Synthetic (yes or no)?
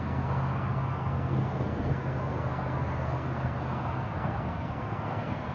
yes